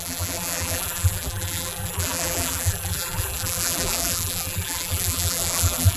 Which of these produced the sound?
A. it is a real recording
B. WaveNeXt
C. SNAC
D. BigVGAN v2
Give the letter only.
D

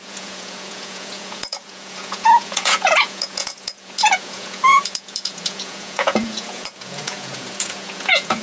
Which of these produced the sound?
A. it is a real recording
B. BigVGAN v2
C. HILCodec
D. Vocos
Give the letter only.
D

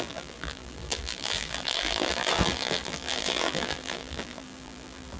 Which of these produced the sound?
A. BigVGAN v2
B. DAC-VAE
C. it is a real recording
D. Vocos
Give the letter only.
A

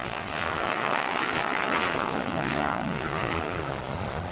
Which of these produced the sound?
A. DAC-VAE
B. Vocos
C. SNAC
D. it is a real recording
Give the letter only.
B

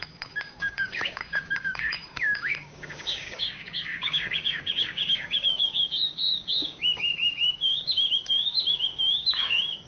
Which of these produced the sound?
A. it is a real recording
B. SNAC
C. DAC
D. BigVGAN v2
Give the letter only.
C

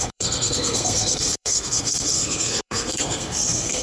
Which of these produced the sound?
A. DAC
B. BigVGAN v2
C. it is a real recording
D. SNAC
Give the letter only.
D